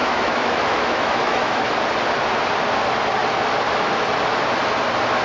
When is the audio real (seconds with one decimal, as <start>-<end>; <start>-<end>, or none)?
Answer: 1.7-5.2